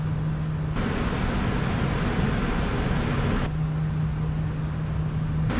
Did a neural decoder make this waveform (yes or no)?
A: no